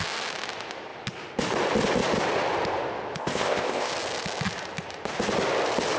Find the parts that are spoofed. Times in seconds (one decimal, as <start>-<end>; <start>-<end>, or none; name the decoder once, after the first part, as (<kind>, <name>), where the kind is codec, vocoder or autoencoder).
3.2-3.9 (codec, ZipCodec)